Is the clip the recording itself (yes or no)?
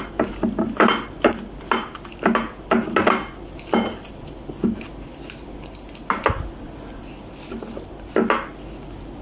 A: yes